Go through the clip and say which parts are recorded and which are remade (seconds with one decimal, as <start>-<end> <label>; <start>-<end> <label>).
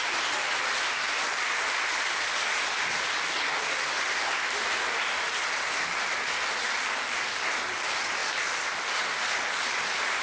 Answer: 0.0-10.2 recorded